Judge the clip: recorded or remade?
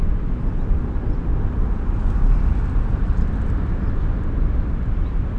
remade